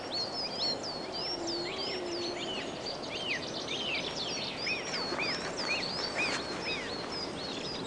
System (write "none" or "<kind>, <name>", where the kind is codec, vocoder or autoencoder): none